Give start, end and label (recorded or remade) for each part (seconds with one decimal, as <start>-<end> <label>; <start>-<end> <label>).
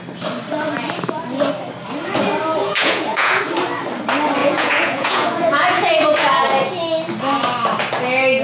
0.0-2.6 recorded; 2.6-3.4 remade; 3.4-4.4 recorded; 4.4-6.4 remade; 6.4-8.4 recorded